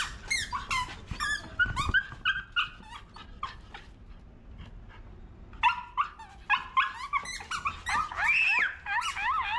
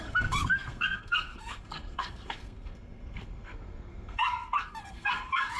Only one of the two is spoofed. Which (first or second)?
second